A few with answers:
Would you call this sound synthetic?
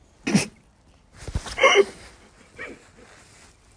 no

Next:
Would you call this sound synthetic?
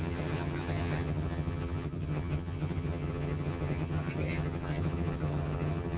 yes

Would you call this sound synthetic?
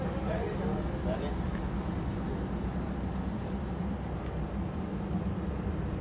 no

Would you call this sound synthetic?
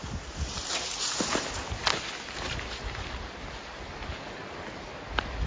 no